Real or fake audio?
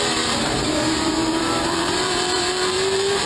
fake